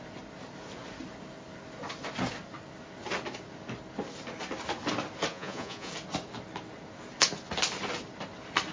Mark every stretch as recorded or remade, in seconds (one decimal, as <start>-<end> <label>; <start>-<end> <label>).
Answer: 0.0-5.3 recorded; 5.3-5.9 remade; 5.9-8.7 recorded